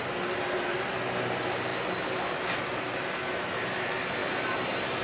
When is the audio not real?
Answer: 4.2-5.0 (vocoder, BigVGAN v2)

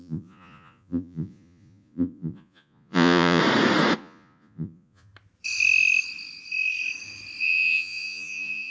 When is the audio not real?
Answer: 0.0-3.4 (vocoder, Vocos); 4.0-5.1; 7.4-8.7

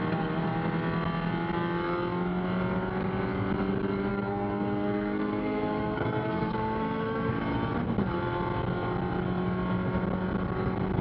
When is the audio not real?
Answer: 4.1-7.3 (codec, SNAC)

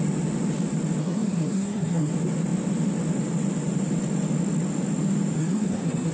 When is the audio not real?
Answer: 1.0-2.1 (codec, SNAC); 5.4-6.1